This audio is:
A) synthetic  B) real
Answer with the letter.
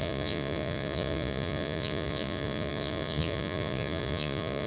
A